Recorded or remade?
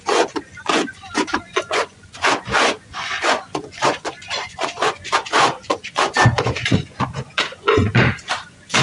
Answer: remade